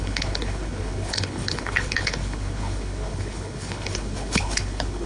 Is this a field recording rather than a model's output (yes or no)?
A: no